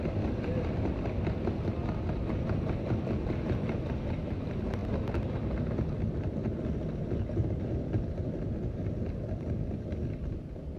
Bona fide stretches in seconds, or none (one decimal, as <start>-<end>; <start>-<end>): 0.0-10.8